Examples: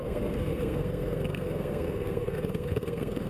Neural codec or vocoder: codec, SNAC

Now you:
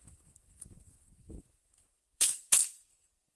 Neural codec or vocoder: codec, SNAC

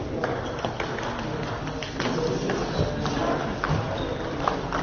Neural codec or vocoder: none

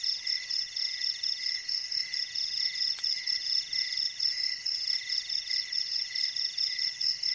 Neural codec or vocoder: none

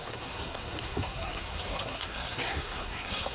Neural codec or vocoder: codec, SNAC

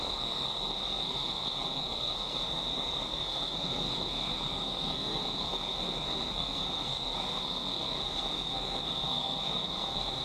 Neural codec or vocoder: codec, SNAC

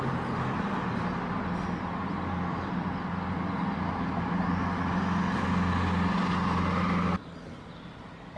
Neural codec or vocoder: none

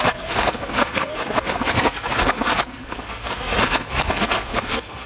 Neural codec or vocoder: codec, SNAC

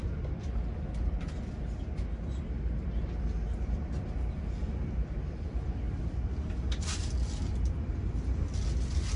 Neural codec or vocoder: none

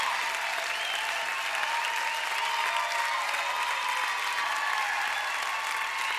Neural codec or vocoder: none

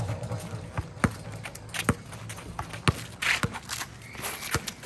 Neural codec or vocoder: none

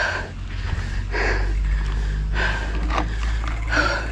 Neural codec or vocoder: none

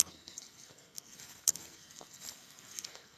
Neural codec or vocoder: codec, SNAC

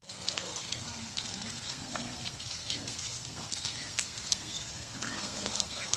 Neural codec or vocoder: codec, SNAC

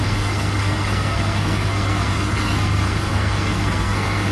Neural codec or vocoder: codec, SNAC